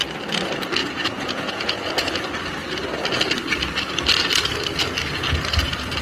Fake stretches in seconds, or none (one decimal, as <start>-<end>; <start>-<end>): 0.8-2.1